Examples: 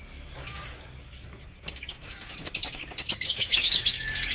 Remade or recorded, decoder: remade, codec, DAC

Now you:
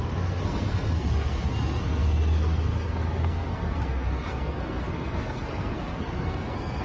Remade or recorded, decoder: remade, codec, SNAC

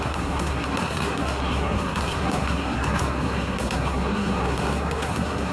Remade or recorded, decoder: remade, codec, SNAC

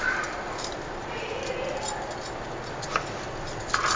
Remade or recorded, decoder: recorded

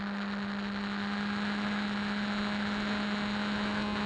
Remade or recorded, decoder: recorded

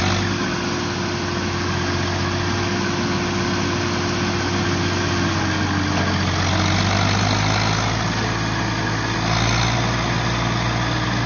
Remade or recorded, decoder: recorded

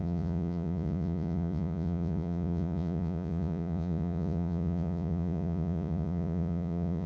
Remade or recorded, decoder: remade, vocoder, Vocos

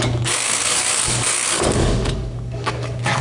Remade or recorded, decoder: remade, codec, DAC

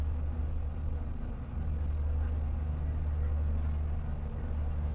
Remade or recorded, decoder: recorded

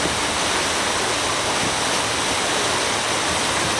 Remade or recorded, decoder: recorded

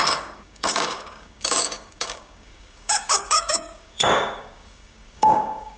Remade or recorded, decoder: remade, codec, DAC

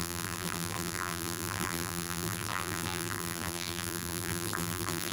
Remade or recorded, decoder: remade, vocoder, BigVGAN v2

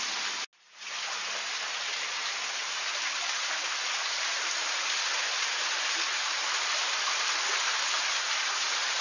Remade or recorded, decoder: recorded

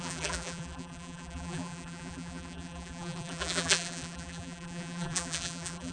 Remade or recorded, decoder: remade, vocoder, BigVGAN v2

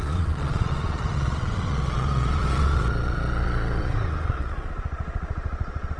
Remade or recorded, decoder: remade, vocoder, Vocos